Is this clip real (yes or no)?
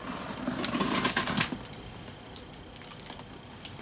yes